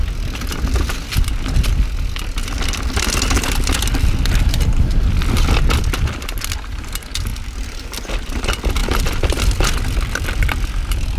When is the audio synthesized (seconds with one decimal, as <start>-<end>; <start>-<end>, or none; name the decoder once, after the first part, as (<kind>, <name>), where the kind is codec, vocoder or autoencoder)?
none